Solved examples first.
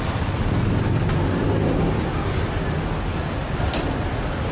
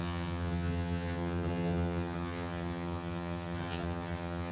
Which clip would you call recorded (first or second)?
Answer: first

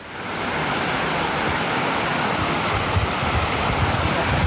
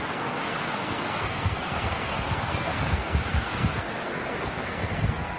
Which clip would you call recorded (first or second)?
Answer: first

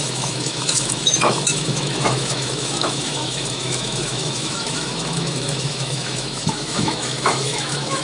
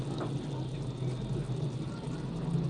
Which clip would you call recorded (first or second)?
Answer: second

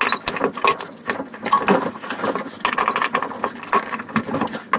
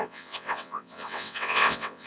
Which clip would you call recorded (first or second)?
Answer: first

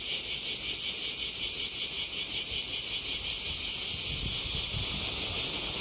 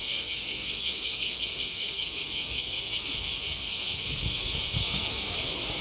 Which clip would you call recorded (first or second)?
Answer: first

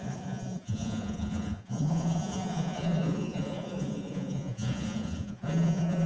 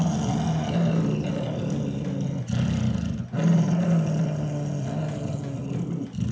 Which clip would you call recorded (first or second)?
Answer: second